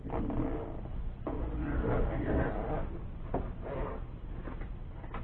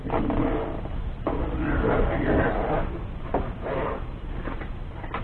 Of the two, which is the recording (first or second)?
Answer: first